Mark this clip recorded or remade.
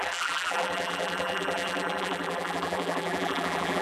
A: remade